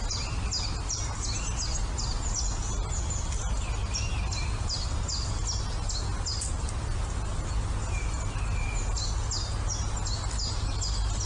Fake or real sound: real